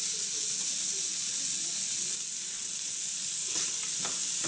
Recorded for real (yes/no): yes